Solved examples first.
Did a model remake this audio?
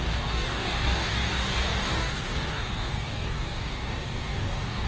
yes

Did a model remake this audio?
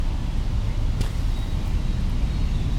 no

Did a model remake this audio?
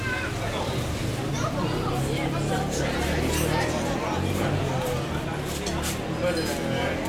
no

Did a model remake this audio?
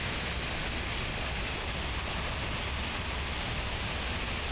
no